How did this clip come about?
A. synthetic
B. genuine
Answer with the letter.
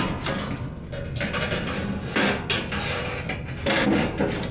B